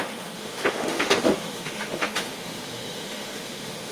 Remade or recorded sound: remade